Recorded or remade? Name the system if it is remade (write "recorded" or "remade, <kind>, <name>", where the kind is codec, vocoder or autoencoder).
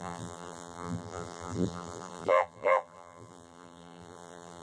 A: remade, vocoder, BigVGAN v2